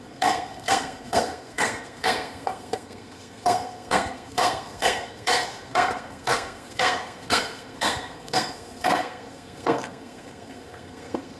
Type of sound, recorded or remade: remade